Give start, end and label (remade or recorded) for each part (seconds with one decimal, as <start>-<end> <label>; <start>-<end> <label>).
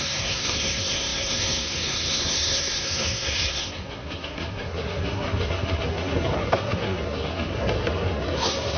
0.0-8.8 remade